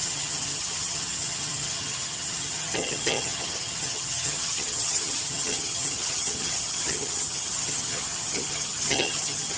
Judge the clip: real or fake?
fake